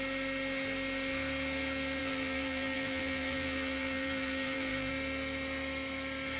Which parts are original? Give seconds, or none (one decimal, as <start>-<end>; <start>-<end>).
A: 0.0-2.0; 4.9-6.4